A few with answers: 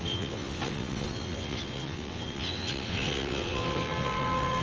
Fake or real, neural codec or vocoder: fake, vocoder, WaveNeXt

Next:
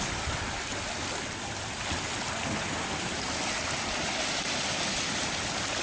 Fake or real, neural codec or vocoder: real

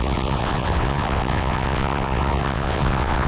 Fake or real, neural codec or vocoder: fake, vocoder, WaveNeXt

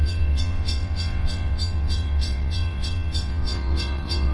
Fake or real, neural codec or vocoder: fake, vocoder, WaveNeXt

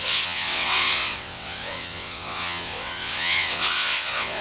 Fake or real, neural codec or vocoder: fake, vocoder, WaveNeXt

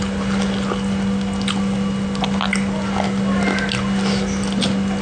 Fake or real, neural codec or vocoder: real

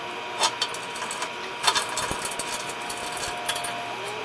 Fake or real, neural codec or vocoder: real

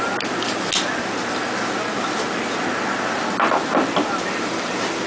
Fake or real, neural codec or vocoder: real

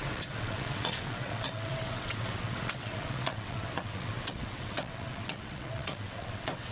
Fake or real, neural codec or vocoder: fake, vocoder, WaveNeXt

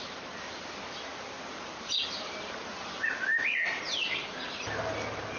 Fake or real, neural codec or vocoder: real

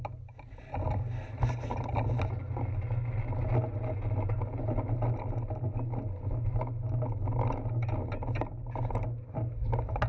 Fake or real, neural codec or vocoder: real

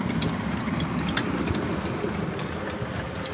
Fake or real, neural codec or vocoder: real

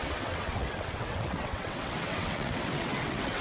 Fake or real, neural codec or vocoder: fake, vocoder, WaveNeXt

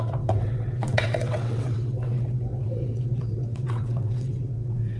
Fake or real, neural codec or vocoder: fake, vocoder, WaveNeXt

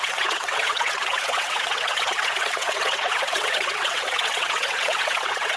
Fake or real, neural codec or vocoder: fake, vocoder, WaveNeXt